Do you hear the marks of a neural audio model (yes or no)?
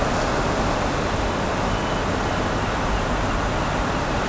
no